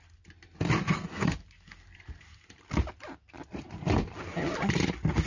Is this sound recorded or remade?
recorded